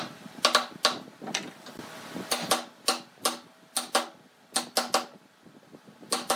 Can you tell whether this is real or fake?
real